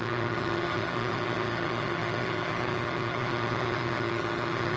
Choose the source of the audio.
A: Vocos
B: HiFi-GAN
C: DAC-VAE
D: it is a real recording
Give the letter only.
B